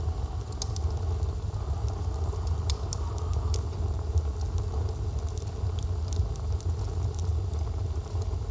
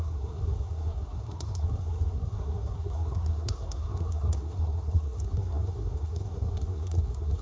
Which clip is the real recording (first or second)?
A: first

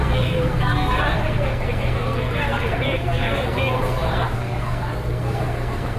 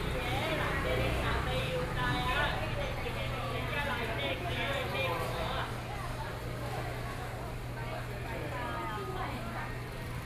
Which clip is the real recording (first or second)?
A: second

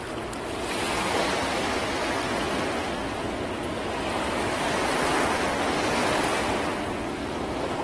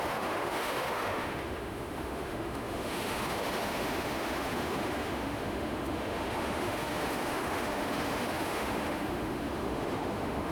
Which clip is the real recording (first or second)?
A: first